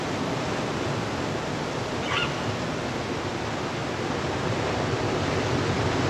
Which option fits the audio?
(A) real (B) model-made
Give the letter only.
A